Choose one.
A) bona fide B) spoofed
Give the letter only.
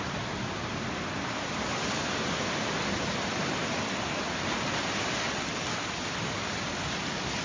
A